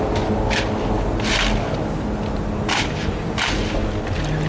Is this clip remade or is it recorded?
recorded